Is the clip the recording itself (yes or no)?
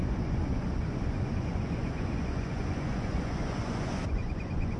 no